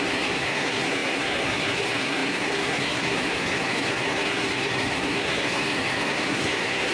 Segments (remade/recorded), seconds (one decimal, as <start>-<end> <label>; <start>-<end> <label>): 0.0-6.9 remade